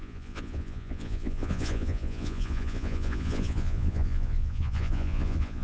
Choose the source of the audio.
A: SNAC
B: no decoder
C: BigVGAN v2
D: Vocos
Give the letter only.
D